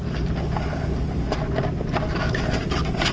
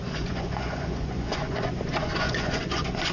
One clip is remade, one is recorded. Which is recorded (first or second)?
first